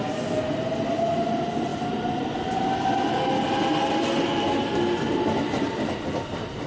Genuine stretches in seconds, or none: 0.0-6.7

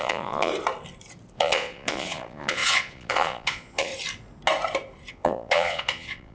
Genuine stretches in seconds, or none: 0.5-1.3; 3.9-5.1

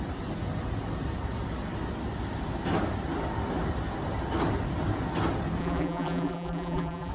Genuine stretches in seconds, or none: 0.0-5.6